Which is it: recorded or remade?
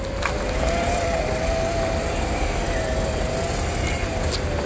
recorded